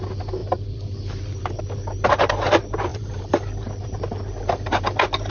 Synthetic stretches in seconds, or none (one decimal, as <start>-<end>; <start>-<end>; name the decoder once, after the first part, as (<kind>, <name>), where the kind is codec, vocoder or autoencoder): 0.4-1.6 (vocoder, BigVGAN v2); 2.9-4.0